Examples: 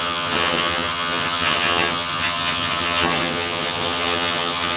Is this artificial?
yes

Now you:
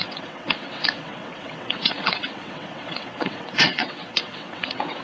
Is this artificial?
yes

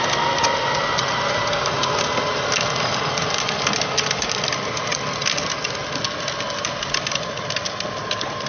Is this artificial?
no